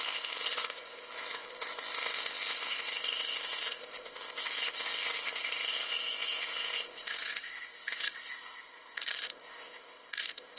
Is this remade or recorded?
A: remade